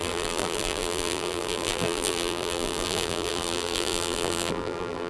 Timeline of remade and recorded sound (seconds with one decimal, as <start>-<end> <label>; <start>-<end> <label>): 0.0-5.1 remade